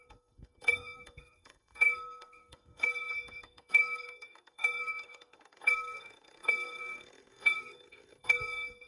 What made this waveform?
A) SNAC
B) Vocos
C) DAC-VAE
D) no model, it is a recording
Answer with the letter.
A